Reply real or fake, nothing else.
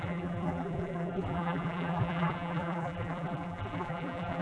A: fake